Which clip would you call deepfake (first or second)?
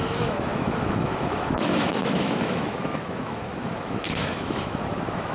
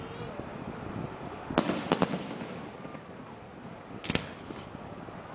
first